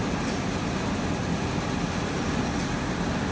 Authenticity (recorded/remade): recorded